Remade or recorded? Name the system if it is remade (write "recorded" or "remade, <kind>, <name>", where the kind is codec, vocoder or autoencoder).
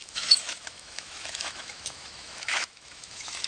remade, autoencoder, DAC-VAE